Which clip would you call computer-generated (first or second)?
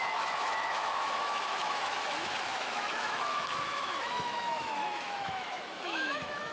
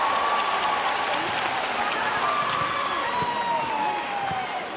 first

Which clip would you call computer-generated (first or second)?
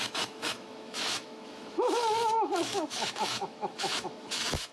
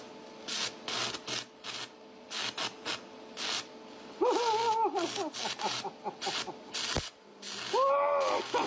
first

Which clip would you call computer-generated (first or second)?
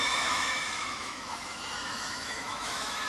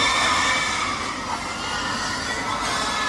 first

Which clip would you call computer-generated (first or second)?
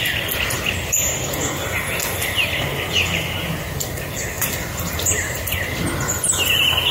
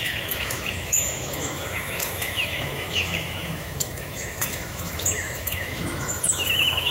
second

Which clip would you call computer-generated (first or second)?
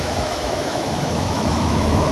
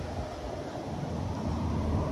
first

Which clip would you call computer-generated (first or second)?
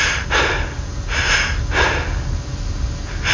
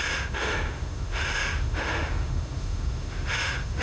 second